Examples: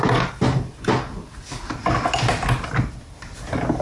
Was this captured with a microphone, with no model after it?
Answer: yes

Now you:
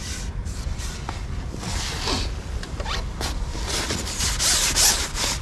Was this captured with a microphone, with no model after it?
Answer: yes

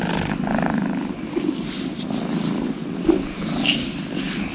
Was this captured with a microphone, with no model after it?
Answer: yes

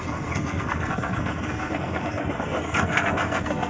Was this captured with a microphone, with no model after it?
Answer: no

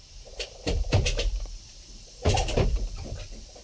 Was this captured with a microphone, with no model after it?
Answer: no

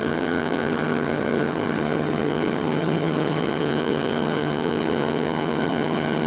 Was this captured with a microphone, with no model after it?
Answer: no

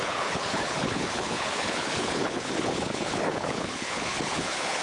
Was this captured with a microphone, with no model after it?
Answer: no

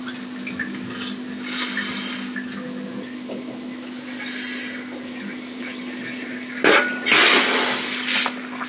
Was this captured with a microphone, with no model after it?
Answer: yes